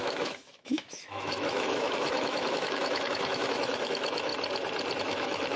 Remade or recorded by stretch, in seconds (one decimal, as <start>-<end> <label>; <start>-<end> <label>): 0.0-4.3 remade; 4.3-5.0 recorded; 5.0-5.6 remade